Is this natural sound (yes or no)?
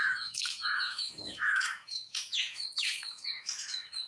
no